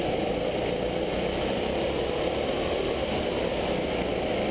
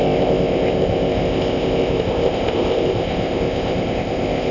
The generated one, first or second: second